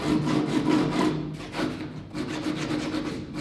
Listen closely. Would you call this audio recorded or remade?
recorded